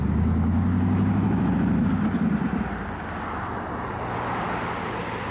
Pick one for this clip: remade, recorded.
recorded